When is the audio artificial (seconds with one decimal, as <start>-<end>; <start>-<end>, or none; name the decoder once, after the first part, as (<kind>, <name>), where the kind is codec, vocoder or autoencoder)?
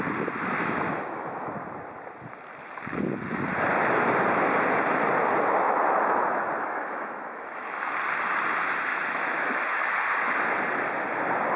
0.6-1.5 (autoencoder, DAC-VAE); 6.6-7.9; 8.9-9.9